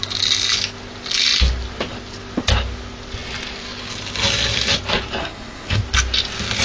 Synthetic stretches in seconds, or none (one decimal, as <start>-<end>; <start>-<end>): 5.2-5.8